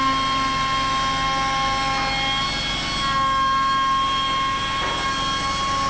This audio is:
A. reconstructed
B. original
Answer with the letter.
B